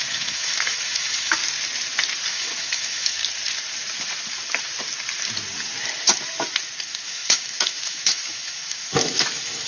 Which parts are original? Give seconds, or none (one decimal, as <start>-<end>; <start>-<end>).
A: 1.4-2.3; 3.2-6.8